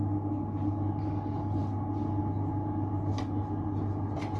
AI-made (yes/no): no